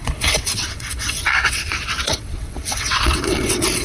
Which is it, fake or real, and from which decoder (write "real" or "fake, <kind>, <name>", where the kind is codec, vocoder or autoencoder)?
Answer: fake, vocoder, WaveNeXt